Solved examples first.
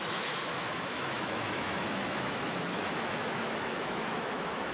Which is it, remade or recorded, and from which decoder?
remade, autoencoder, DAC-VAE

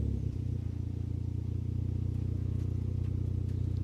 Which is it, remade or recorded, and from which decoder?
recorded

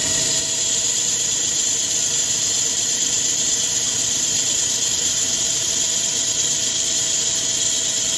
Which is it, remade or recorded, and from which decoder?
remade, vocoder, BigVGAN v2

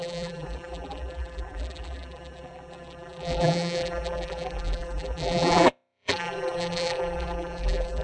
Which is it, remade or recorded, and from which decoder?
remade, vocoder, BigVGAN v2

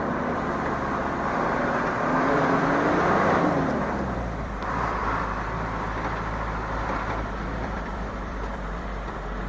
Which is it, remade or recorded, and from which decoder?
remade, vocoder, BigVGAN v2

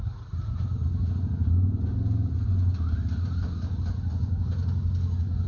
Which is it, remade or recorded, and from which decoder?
recorded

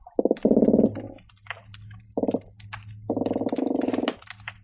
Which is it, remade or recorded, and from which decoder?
recorded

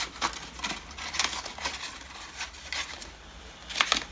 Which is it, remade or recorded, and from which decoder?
recorded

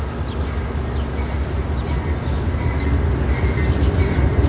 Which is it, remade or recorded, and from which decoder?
recorded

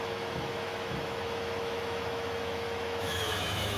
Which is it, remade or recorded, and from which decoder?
remade, autoencoder, DAC-VAE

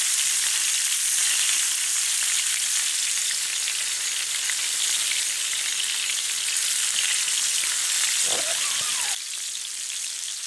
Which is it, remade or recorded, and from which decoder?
recorded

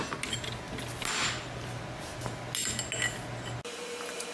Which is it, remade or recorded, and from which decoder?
recorded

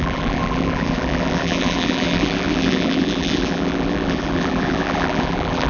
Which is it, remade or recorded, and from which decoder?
remade, vocoder, BigVGAN v2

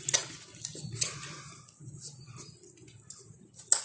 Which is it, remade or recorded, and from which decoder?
recorded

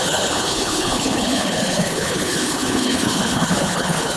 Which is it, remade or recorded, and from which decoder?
remade, codec, HILCodec